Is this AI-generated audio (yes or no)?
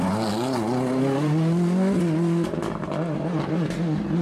no